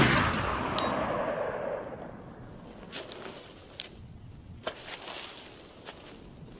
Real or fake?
real